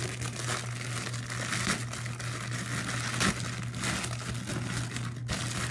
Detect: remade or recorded recorded